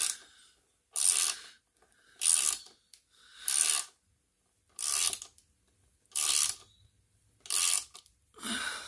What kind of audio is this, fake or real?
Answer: real